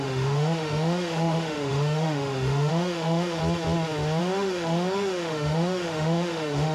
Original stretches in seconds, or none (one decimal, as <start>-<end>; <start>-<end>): 3.4-4.2